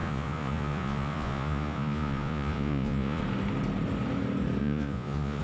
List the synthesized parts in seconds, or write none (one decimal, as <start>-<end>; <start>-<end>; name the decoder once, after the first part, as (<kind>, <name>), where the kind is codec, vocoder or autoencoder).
0.0-3.2 (vocoder, Vocos); 4.6-5.4